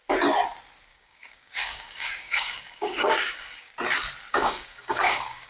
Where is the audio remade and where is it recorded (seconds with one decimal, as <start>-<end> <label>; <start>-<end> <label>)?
0.0-0.9 recorded; 0.9-3.7 remade; 3.7-4.3 recorded; 4.3-5.5 remade